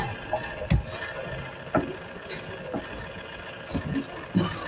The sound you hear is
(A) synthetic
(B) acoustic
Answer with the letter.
B